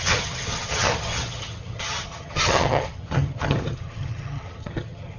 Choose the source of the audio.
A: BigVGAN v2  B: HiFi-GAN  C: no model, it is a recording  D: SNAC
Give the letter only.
B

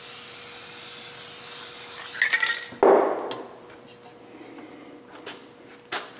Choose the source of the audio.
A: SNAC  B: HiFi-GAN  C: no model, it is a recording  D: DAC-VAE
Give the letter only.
C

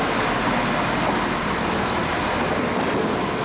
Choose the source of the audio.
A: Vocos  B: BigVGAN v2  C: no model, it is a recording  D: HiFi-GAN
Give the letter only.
C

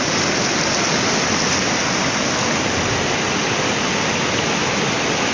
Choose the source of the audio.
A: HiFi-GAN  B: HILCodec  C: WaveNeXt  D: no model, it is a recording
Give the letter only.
D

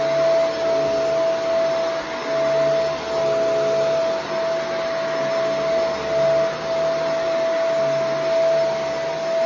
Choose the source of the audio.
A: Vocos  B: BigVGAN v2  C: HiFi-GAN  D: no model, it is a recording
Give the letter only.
D